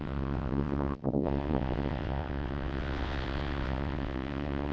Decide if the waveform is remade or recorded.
remade